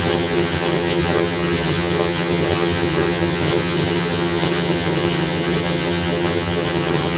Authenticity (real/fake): fake